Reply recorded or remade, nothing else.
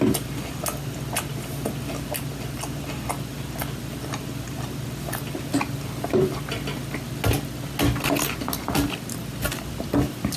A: recorded